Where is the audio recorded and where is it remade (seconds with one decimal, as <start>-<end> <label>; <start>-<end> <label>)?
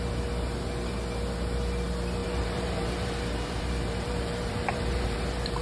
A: 0.0-2.2 recorded; 2.2-5.6 remade